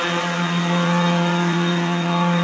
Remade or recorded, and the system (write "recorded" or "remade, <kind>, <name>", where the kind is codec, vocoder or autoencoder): remade, vocoder, Vocos